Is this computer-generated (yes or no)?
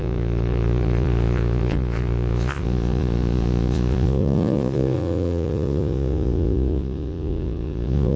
yes